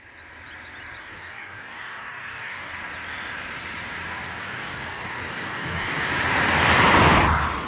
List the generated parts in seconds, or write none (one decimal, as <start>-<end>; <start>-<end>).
1.0-2.7; 4.4-6.1